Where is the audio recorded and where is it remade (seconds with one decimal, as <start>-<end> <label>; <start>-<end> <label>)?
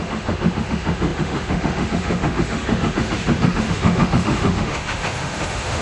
0.0-5.8 remade